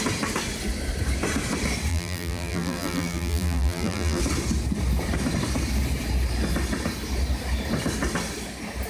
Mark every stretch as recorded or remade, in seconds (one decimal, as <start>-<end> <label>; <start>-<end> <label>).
0.0-1.9 recorded; 1.9-4.2 remade; 4.2-8.9 recorded